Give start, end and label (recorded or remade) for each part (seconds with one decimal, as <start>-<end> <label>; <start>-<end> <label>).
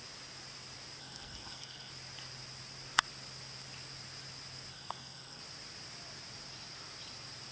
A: 0.0-1.0 recorded; 1.0-1.9 remade; 1.9-4.7 recorded; 4.7-5.4 remade; 5.4-7.5 recorded